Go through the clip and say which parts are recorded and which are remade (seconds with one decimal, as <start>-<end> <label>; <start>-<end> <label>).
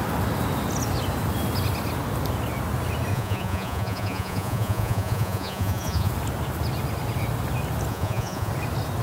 0.0-3.1 recorded; 3.1-6.1 remade; 6.1-7.9 recorded; 7.9-8.5 remade; 8.5-9.0 recorded